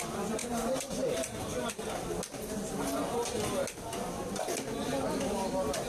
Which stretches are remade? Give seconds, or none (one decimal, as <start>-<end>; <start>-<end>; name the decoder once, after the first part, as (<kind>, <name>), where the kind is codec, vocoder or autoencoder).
0.4-1.7 (vocoder, BigVGAN v2)